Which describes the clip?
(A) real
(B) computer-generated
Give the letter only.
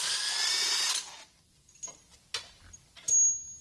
A